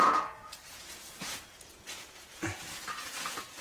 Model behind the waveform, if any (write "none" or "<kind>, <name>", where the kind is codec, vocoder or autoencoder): vocoder, Vocos